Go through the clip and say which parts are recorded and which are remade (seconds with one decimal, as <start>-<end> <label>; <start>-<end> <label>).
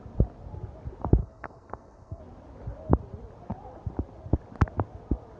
0.0-1.2 recorded; 1.2-2.2 remade; 2.2-5.4 recorded